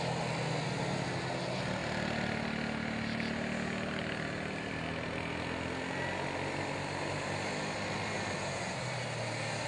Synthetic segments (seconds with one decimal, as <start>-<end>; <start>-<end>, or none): none